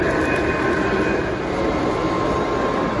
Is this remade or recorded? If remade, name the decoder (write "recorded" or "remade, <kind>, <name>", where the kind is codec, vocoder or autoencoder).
recorded